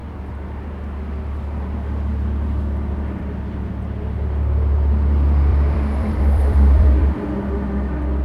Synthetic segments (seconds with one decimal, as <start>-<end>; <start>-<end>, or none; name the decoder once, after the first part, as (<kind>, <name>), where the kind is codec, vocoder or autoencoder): 5.5-7.5 (vocoder, BigVGAN v2)